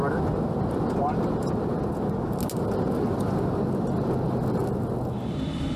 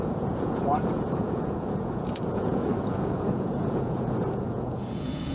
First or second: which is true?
first